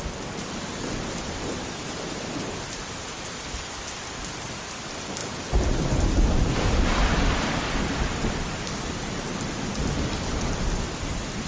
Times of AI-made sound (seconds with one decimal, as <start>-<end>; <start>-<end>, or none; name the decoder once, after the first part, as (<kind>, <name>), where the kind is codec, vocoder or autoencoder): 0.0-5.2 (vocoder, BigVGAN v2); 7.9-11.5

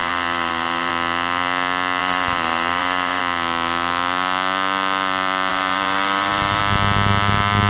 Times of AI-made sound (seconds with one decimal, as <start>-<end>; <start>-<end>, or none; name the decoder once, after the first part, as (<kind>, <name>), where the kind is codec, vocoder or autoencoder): 0.0-0.9 (vocoder, BigVGAN v2); 2.0-3.2; 5.5-6.6

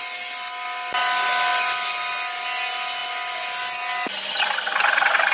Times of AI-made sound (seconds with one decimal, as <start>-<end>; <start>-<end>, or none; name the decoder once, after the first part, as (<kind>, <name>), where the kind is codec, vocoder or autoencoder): none

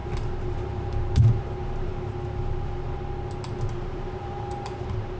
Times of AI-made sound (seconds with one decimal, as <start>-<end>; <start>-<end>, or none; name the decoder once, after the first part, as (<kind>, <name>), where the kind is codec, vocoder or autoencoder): 1.4-1.9 (vocoder, BigVGAN v2); 3.7-5.2

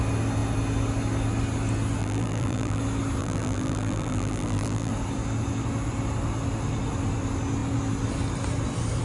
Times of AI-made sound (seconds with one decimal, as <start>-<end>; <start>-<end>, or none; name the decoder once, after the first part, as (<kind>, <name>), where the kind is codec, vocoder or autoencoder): 2.0-2.8 (vocoder, BigVGAN v2); 3.2-4.9

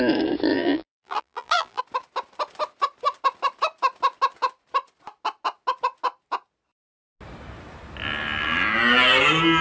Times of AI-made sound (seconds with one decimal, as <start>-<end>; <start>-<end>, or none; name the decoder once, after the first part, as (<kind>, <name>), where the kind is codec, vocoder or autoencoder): 0.5-1.8 (vocoder, BigVGAN v2)